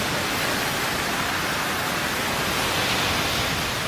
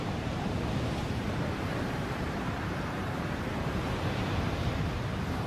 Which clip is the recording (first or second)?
first